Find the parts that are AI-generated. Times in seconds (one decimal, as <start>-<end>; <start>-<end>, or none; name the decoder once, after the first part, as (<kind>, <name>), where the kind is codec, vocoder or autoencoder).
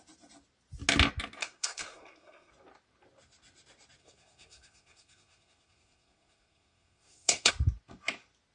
1.4-2.5 (codec, SNAC); 4.0-7.5